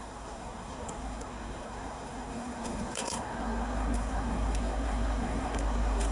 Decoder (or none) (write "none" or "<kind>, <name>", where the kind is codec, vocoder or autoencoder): codec, SNAC